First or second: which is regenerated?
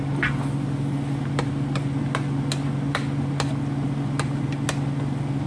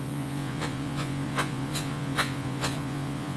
second